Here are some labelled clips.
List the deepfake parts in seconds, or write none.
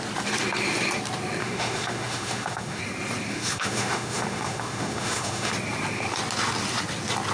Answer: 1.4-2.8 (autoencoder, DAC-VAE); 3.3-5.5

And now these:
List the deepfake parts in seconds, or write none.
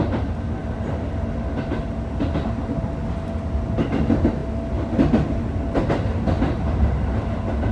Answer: none